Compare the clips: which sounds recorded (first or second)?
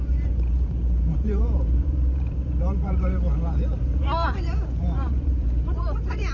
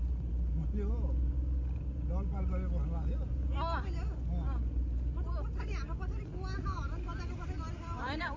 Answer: second